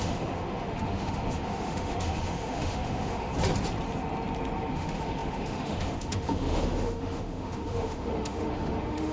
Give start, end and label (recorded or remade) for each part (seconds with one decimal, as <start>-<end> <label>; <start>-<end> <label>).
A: 0.0-3.3 remade; 3.3-4.7 recorded; 4.7-9.1 remade